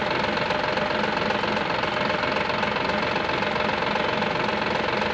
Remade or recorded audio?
recorded